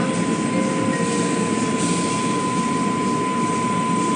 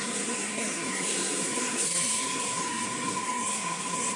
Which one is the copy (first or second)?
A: second